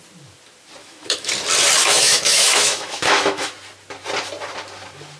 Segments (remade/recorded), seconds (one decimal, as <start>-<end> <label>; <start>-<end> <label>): 0.0-0.8 recorded; 0.8-1.3 remade; 1.3-1.8 recorded; 1.8-3.5 remade; 3.5-5.2 recorded